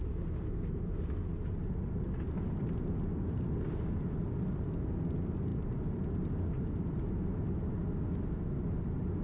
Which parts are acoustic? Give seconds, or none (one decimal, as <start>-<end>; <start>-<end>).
0.0-9.2